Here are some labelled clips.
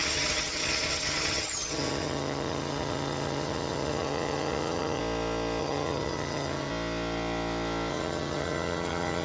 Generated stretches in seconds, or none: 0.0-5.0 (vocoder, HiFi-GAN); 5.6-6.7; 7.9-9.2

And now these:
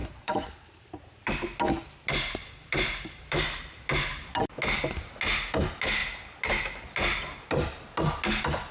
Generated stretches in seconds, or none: 0.0-1.3 (vocoder, BigVGAN v2); 2.4-3.8

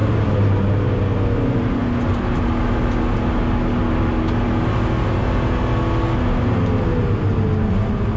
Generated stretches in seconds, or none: none

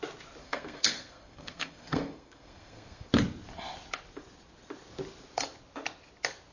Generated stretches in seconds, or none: 0.4-3.1 (codec, SNAC)

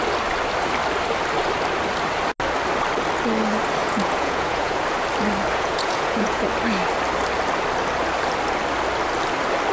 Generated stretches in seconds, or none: 3.8-4.8 (vocoder, Vocos); 5.5-6.4

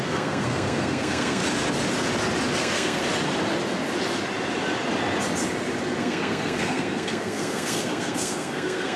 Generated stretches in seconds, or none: 0.0-1.4 (codec, SNAC); 2.6-3.0; 6.0-9.0